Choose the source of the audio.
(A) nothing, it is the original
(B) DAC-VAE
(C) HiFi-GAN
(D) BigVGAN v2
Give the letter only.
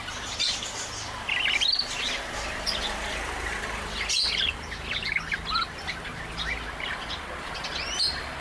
A